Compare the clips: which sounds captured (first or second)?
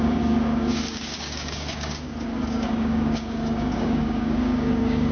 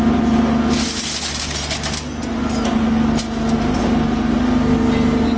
second